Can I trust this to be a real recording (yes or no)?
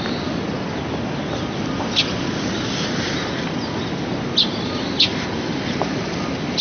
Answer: yes